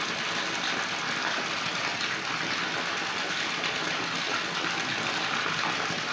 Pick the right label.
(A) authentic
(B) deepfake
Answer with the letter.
A